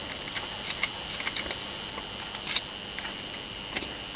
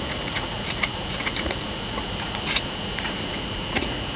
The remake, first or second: second